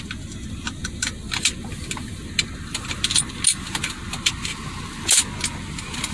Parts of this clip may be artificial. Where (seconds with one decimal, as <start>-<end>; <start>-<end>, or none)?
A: none